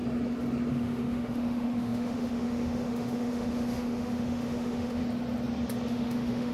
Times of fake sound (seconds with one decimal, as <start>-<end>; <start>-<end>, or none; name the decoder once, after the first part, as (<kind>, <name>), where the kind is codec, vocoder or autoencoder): 0.7-5.0 (autoencoder, DAC-VAE); 5.9-6.5